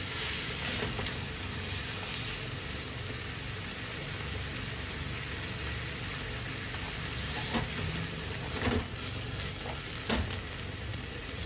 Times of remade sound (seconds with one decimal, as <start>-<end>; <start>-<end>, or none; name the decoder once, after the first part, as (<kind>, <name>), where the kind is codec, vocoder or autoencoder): 10.9-11.5 (vocoder, Vocos)